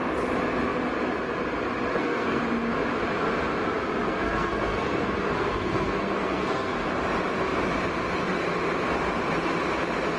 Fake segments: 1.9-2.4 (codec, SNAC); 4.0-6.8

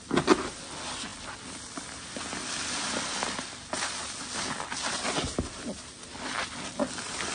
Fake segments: none

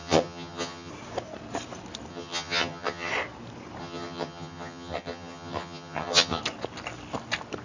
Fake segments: 0.0-0.9 (vocoder, HiFi-GAN); 2.1-3.1; 3.8-6.4